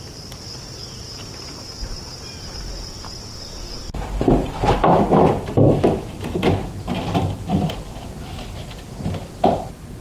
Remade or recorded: recorded